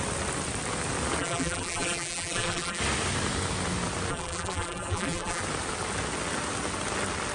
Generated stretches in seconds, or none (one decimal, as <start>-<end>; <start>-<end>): 1.2-2.8; 4.1-5.4